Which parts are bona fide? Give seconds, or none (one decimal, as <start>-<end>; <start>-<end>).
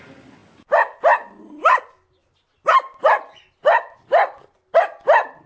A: 0.0-5.5